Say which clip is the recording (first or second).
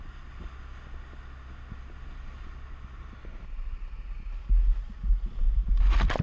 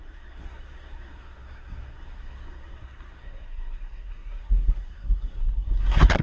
first